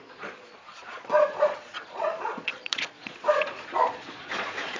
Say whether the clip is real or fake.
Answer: fake